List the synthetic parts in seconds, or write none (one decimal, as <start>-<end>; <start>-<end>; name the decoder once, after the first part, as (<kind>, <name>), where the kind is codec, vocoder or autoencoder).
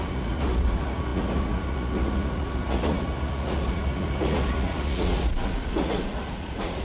0.0-6.8 (vocoder, Vocos)